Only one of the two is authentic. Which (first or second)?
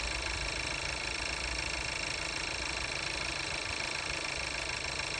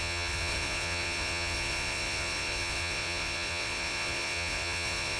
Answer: first